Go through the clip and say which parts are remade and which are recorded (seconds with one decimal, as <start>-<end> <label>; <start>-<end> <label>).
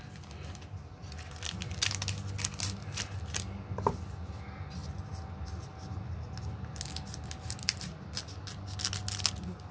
0.0-9.7 recorded